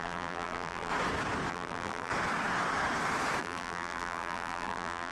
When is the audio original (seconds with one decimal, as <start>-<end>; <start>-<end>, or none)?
0.9-1.5; 2.1-3.4